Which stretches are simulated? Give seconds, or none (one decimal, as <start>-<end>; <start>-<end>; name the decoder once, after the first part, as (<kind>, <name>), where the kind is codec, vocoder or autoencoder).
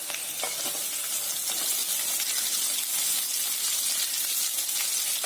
none